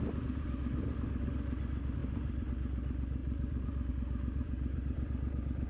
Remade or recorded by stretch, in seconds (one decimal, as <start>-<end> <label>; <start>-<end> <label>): 0.0-2.0 recorded; 2.0-2.5 remade; 2.5-3.2 recorded; 3.2-3.9 remade; 3.9-4.4 recorded; 4.4-5.3 remade; 5.3-5.7 recorded